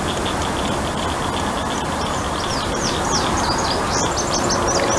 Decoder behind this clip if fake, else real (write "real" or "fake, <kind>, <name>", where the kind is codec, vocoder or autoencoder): real